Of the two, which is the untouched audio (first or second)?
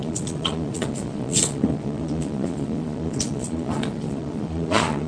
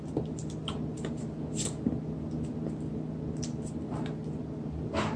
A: second